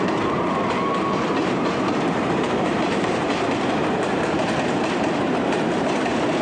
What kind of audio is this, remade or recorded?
remade